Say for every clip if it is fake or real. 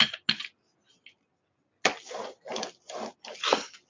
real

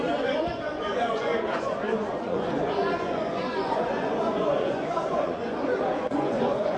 fake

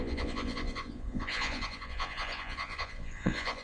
fake